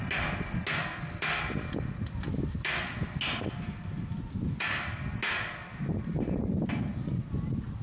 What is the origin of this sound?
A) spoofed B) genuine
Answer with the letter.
B